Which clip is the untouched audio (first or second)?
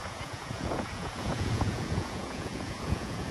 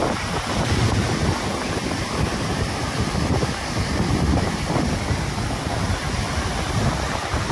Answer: second